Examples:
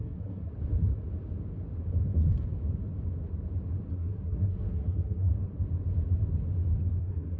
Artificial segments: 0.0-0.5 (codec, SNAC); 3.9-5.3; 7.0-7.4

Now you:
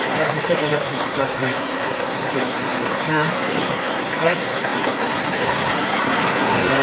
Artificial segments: 0.0-6.8 (codec, SNAC)